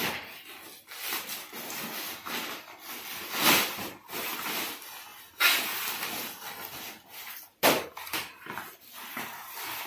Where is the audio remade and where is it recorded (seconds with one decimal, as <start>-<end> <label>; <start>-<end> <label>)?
0.0-9.9 recorded